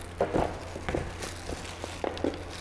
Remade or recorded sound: recorded